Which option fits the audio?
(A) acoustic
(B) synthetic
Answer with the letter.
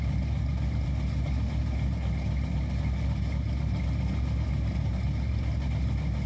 A